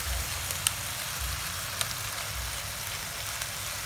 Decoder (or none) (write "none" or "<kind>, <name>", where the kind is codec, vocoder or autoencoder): none